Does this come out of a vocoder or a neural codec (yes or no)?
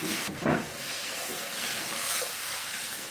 yes